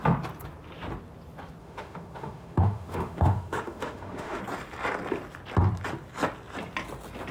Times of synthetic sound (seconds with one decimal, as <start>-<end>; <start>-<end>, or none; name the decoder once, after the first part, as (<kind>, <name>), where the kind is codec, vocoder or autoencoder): 1.6-4.4 (autoencoder, DAC-VAE)